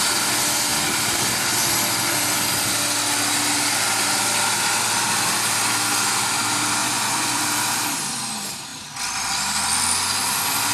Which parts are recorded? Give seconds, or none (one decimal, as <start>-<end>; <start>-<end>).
0.0-6.8; 7.4-10.7